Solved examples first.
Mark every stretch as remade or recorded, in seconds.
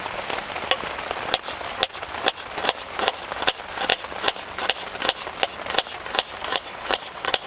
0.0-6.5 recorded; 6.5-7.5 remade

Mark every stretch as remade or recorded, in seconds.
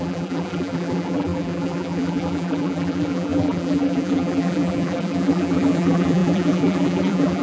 0.0-7.4 remade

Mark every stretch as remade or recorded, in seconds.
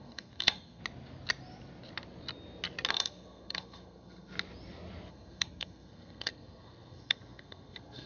0.0-0.8 remade; 0.8-2.9 recorded; 2.9-4.3 remade; 4.3-5.1 recorded; 5.1-8.1 remade